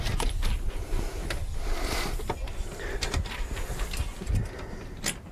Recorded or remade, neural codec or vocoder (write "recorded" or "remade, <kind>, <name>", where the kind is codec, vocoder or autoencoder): recorded